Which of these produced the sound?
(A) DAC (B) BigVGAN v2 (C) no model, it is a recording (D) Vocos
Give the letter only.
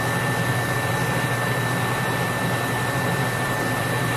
C